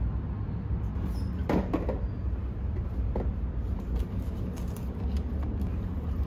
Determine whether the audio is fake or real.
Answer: real